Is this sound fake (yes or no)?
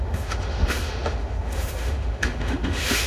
yes